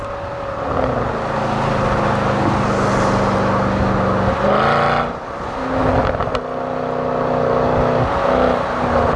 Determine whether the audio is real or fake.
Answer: real